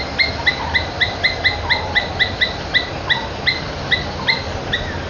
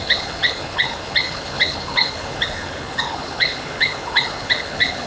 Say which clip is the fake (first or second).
second